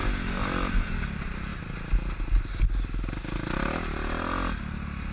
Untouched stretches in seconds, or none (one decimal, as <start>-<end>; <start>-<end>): 0.0-5.1